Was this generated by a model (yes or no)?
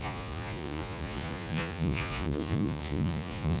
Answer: yes